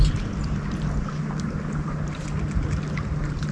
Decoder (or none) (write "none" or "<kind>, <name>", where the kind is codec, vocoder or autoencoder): none